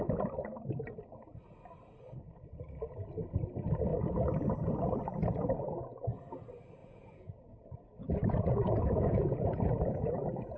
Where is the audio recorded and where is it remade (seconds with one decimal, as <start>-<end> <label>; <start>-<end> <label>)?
0.0-6.8 recorded; 6.8-10.0 remade; 10.0-10.6 recorded